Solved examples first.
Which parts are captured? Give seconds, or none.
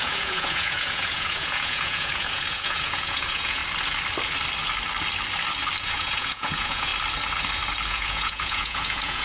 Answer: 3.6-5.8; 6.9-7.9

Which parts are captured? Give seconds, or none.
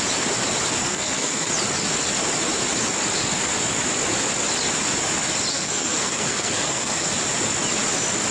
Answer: 0.0-0.8; 1.5-5.5; 7.1-8.3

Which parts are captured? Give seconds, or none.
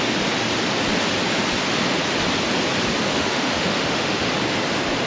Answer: 0.0-3.1; 4.3-5.1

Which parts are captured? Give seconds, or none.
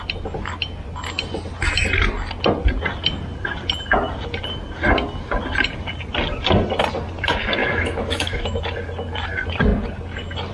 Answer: 0.0-7.6; 8.6-10.5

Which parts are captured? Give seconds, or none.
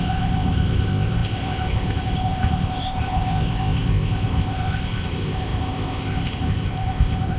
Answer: none